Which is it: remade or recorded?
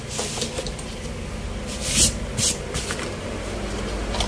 recorded